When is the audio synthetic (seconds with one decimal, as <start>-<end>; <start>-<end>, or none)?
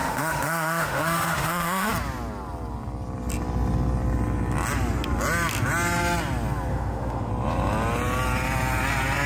0.0-1.9; 6.7-7.3